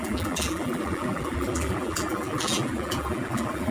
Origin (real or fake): fake